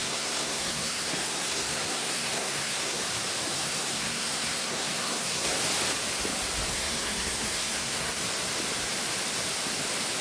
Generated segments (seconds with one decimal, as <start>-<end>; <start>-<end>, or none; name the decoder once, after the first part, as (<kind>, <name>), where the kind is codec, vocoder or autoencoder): 0.0-3.0 (codec, SNAC); 3.5-5.6; 6.7-8.2